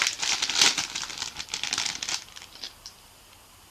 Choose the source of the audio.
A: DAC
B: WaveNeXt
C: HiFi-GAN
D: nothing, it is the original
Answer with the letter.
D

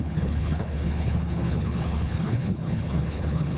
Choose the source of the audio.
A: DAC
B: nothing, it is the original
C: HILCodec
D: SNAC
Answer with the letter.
C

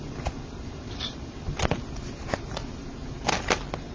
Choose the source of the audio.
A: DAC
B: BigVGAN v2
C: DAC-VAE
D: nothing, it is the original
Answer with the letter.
D